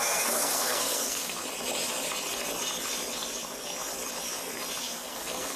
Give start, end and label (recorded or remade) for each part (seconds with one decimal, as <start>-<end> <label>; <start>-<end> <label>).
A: 0.0-1.4 remade; 1.4-4.8 recorded; 4.8-5.6 remade

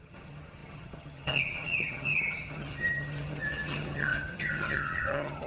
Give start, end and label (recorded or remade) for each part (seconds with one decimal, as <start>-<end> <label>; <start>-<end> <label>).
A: 0.0-5.5 remade

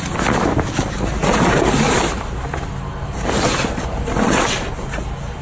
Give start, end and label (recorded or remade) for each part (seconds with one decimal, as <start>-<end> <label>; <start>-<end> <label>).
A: 0.0-1.2 recorded; 1.2-4.4 remade; 4.4-5.4 recorded

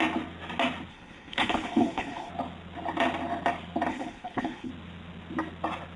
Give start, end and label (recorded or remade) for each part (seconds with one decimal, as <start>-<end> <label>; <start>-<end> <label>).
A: 0.0-0.9 recorded; 0.9-2.3 remade; 2.3-3.9 recorded; 3.9-4.7 remade; 4.7-6.0 recorded

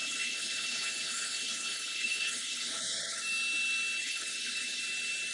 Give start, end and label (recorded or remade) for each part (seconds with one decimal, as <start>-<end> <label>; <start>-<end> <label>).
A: 0.0-3.2 remade; 3.2-4.0 recorded; 4.0-4.8 remade; 4.8-5.3 recorded

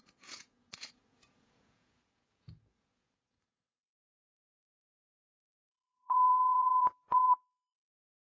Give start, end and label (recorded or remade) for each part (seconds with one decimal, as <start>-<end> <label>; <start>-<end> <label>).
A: 0.0-8.4 remade

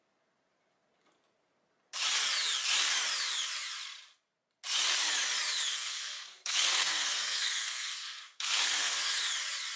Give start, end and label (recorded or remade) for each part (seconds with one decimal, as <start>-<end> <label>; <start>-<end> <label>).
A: 0.0-5.7 recorded; 5.7-9.2 remade; 9.2-9.8 recorded

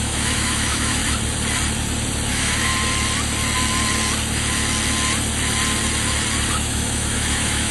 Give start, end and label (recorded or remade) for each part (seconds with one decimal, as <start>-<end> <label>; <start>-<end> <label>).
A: 0.0-1.0 remade; 1.0-2.3 recorded; 2.3-2.7 remade; 2.7-6.5 recorded; 6.5-7.7 remade